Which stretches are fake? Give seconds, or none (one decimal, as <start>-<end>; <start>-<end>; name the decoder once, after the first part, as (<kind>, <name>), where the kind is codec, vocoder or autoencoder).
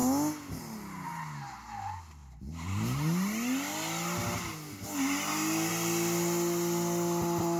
none